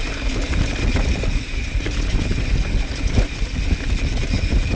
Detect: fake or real real